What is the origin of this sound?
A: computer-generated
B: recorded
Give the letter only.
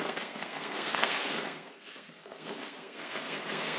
A